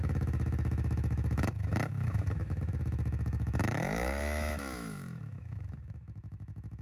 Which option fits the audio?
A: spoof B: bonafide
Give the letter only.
A